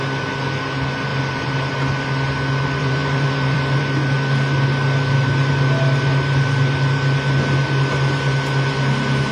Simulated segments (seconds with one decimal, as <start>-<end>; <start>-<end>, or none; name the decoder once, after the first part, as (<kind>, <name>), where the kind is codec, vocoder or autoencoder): 1.1-1.7 (vocoder, BigVGAN v2); 2.8-3.8